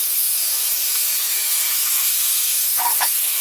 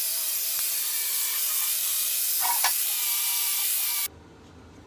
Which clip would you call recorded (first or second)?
second